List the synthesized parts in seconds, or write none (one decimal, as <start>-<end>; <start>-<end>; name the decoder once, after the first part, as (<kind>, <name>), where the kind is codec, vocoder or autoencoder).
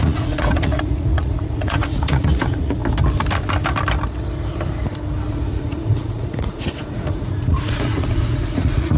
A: 0.0-2.8 (vocoder, Vocos); 5.3-9.0